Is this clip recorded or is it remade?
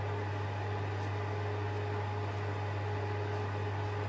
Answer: recorded